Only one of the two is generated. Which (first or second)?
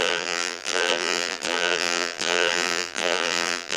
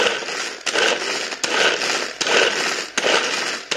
first